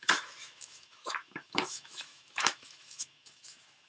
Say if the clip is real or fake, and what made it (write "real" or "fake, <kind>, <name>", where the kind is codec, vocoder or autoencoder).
fake, autoencoder, DAC-VAE